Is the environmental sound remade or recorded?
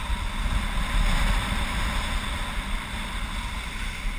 recorded